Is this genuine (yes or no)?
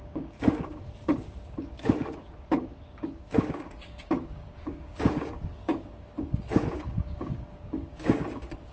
no